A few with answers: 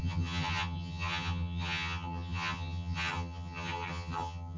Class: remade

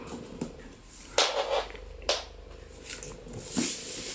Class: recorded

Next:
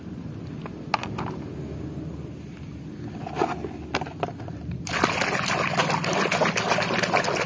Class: recorded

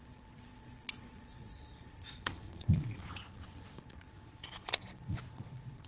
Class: remade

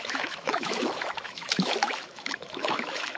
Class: remade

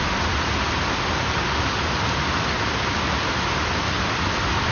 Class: recorded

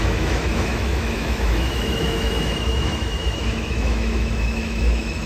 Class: remade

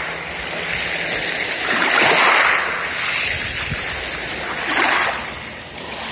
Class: recorded